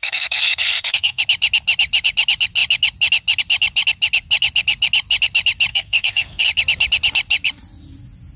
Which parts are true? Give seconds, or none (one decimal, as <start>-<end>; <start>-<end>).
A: 1.2-5.7; 6.4-8.4